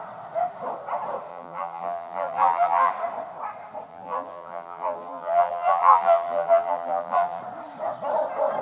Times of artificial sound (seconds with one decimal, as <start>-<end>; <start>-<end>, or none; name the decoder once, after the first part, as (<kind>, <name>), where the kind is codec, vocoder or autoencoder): 1.3-2.9 (vocoder, BigVGAN v2); 3.9-7.4